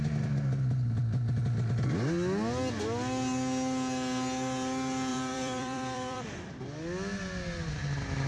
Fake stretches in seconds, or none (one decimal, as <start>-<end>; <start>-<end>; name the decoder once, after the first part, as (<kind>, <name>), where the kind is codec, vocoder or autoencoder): 5.1-6.6 (vocoder, BigVGAN v2)